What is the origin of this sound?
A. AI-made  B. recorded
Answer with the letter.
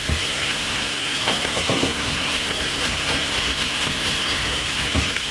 A